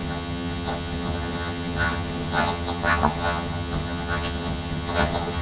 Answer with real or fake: fake